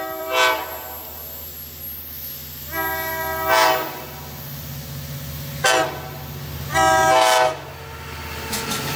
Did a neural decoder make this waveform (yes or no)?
no